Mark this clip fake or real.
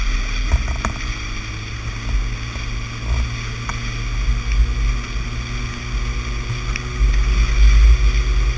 real